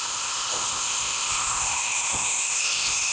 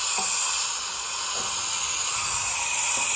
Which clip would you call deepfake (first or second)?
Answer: first